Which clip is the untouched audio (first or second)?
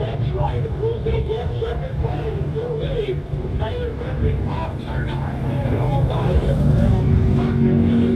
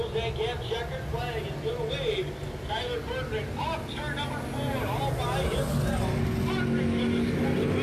second